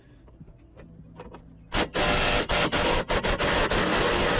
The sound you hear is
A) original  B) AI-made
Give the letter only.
A